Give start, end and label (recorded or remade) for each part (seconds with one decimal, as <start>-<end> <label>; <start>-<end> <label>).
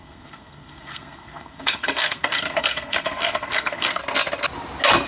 0.0-4.0 remade; 4.0-5.1 recorded